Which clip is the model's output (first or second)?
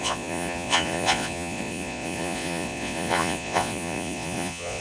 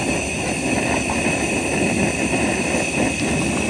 first